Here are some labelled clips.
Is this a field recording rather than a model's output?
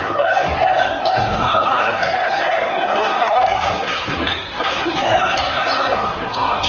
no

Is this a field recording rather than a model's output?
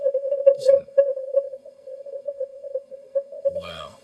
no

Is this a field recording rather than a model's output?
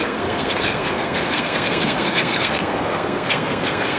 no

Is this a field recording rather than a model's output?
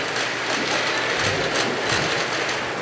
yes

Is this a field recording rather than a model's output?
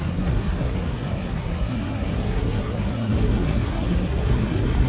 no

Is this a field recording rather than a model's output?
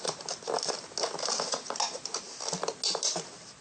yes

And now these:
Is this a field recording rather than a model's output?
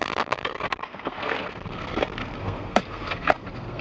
no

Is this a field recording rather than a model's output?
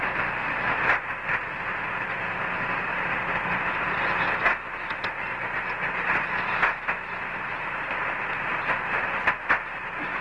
yes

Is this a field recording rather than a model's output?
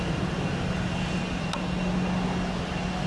yes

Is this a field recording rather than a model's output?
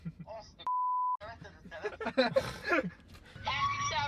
yes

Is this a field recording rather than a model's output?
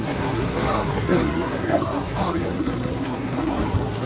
no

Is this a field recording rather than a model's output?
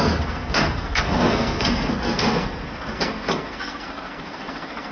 no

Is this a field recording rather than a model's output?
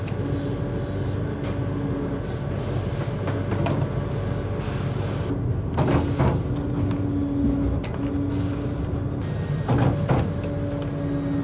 yes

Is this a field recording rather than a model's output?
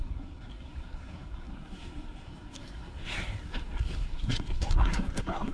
no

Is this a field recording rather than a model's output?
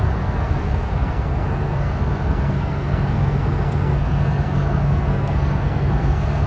no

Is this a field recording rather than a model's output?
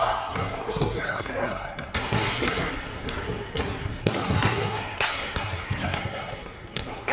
no